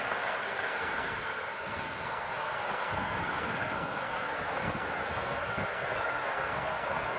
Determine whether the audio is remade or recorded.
remade